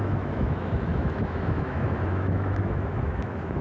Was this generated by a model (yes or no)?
yes